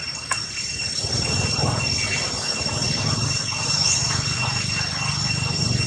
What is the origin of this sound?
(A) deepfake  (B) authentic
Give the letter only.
B